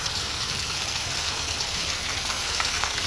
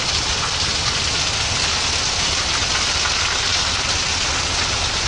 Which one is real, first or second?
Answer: second